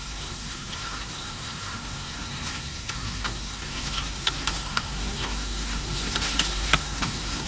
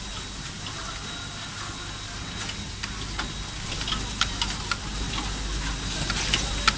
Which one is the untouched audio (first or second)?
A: second